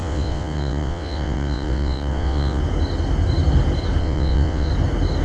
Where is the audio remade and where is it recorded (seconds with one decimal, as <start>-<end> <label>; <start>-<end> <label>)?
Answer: 0.0-2.6 remade; 2.6-4.0 recorded; 4.0-4.7 remade; 4.7-5.2 recorded